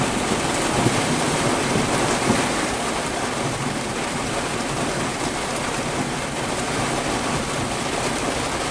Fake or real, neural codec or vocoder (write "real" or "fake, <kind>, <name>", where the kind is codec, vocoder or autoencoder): fake, vocoder, BigVGAN v2